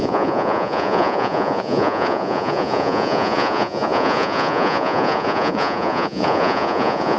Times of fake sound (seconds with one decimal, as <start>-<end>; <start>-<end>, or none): 0.0-7.2

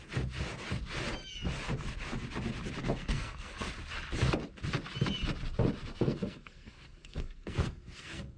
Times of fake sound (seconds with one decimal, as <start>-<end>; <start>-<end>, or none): 2.8-3.7; 5.8-8.4